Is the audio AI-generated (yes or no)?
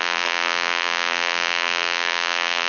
yes